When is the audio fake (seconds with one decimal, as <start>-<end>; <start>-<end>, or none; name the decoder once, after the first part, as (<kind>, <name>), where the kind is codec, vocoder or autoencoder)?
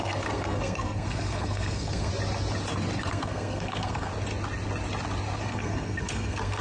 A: 0.0-2.1 (codec, SNAC); 3.0-4.1; 5.4-6.6